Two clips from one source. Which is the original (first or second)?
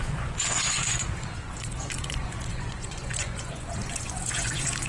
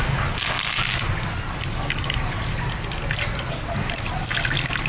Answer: second